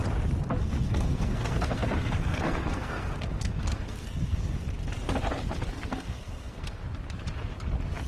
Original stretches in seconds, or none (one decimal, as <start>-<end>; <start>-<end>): 0.0-0.6; 4.6-5.7; 6.8-8.1